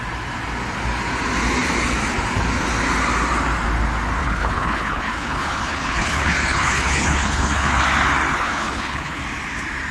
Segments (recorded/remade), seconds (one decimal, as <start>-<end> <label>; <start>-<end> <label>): 0.0-4.2 recorded; 4.2-7.8 remade; 7.8-8.3 recorded; 8.3-9.2 remade; 9.2-9.9 recorded